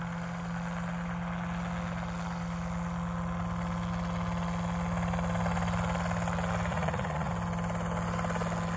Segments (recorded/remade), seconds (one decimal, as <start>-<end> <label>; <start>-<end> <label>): 0.0-6.7 recorded; 6.7-7.3 remade; 7.3-8.8 recorded